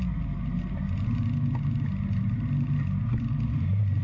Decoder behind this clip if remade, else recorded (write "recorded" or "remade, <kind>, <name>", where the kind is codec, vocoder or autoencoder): recorded